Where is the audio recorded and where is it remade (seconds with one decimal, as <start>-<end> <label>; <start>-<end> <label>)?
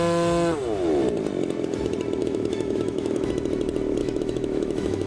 0.0-2.2 recorded; 2.2-3.3 remade; 3.3-4.0 recorded; 4.0-5.1 remade